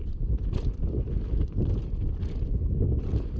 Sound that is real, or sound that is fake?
real